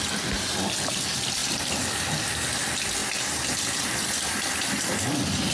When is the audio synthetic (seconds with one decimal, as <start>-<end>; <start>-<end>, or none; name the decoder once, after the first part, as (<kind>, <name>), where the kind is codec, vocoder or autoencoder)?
1.4-2.4 (vocoder, BigVGAN v2)